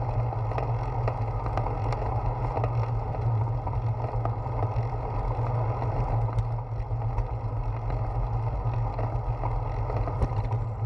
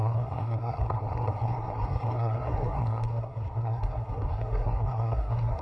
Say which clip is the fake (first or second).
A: second